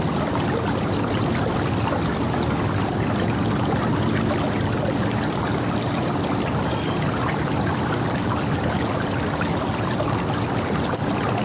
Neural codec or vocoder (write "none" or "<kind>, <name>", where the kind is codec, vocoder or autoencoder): none